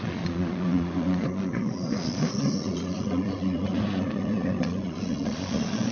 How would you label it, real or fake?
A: fake